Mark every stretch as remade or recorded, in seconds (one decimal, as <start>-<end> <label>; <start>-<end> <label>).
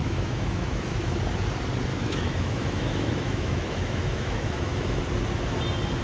0.0-1.2 remade; 1.2-1.9 recorded; 1.9-5.0 remade; 5.0-6.0 recorded